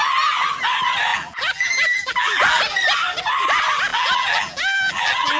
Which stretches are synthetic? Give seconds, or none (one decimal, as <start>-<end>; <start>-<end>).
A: 1.1-2.6; 3.9-5.4